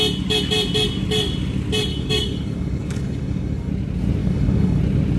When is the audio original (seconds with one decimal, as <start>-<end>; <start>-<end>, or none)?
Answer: 0.0-1.9; 3.7-4.2; 4.8-5.2

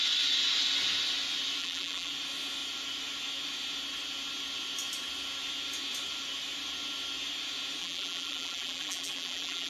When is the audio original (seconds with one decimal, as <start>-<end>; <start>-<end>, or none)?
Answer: 0.0-1.6; 2.1-7.8

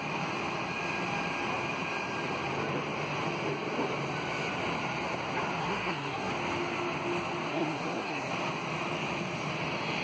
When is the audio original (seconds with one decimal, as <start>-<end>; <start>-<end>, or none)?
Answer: 0.0-5.6; 6.3-7.5; 8.3-10.0

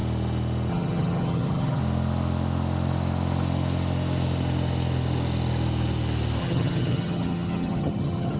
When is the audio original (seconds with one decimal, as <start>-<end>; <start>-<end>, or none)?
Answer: 0.0-0.7; 1.8-6.4

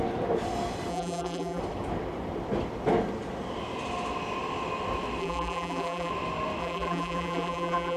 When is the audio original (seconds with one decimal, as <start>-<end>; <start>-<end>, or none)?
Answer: 0.0-0.9; 1.6-5.2; 6.1-6.6